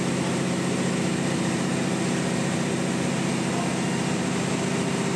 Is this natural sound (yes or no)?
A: yes